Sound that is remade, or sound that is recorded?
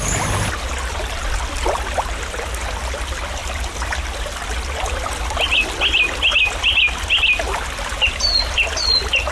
recorded